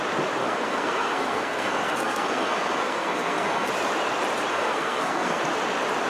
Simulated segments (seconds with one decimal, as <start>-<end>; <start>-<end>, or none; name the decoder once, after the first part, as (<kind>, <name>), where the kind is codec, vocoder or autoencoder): 0.4-3.7 (codec, SNAC); 4.5-5.4